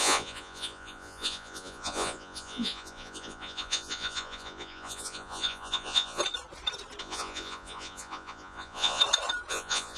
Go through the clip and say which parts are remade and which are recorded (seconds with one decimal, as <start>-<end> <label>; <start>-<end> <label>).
0.0-6.2 remade; 6.2-7.0 recorded; 7.0-9.0 remade; 9.0-9.5 recorded; 9.5-10.0 remade

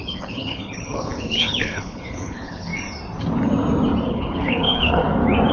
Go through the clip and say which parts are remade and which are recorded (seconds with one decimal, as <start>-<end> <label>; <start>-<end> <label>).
0.0-2.7 remade; 2.7-4.1 recorded; 4.1-5.0 remade; 5.0-5.5 recorded

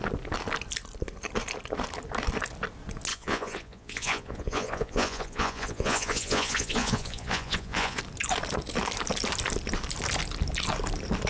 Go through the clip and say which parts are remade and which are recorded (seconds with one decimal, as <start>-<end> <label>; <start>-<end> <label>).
0.0-3.1 recorded; 3.1-8.0 remade; 8.0-11.3 recorded

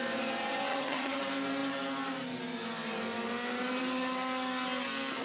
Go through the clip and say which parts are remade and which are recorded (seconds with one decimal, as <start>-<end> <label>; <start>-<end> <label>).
0.0-0.7 recorded; 0.7-1.2 remade; 1.2-5.2 recorded

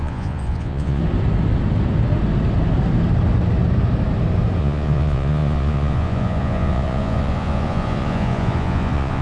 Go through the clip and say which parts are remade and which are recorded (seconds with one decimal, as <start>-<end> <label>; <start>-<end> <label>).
0.0-1.0 remade; 1.0-4.6 recorded; 4.6-9.2 remade